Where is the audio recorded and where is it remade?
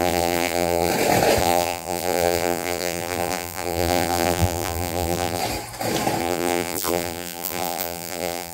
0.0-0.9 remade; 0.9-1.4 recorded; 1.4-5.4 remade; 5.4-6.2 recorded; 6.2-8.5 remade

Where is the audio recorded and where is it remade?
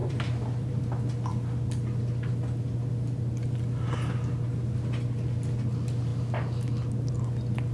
0.0-0.8 remade; 0.8-7.7 recorded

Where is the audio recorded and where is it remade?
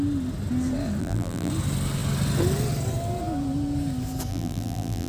0.0-1.0 recorded; 1.0-1.5 remade; 1.5-4.3 recorded; 4.3-5.1 remade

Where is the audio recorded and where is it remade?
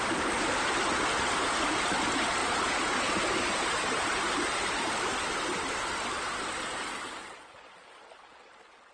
0.0-2.4 recorded; 2.4-4.7 remade; 4.7-8.9 recorded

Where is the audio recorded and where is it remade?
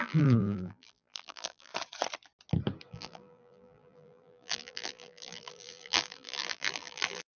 0.0-1.7 remade; 1.7-2.9 recorded; 2.9-7.4 remade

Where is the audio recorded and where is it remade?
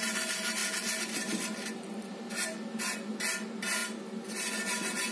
0.0-5.1 recorded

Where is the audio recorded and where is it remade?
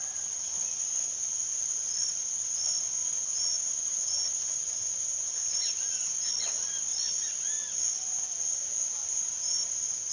0.0-3.0 recorded; 3.0-6.3 remade; 6.3-9.0 recorded; 9.0-9.7 remade; 9.7-10.1 recorded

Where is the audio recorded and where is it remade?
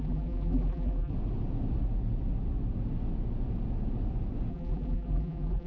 0.0-1.1 remade; 1.1-4.5 recorded; 4.5-5.7 remade